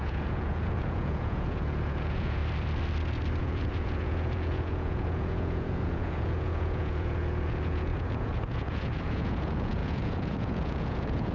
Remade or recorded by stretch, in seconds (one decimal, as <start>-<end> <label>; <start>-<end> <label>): 0.0-2.4 remade; 2.4-3.4 recorded; 3.4-11.3 remade